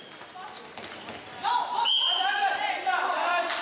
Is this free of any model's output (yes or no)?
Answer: yes